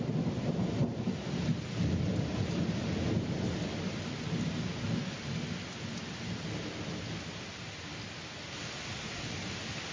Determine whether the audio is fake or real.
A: real